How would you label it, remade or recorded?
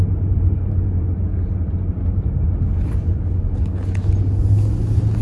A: recorded